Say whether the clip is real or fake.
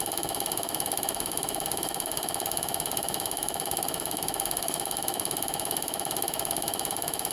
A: fake